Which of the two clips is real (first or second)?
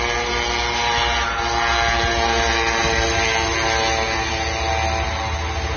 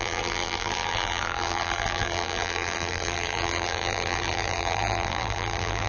first